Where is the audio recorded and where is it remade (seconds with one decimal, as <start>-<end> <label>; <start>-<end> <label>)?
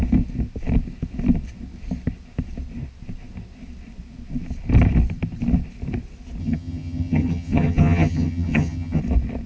0.0-6.4 recorded; 6.4-9.0 remade; 9.0-9.5 recorded